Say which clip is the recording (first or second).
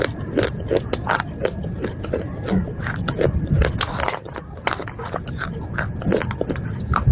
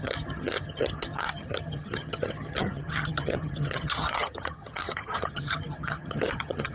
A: first